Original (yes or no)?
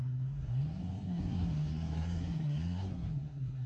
no